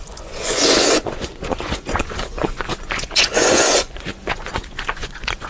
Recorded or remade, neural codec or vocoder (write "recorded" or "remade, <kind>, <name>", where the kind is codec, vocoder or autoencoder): remade, vocoder, Vocos